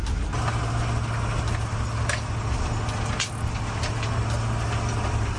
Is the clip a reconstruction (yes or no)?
no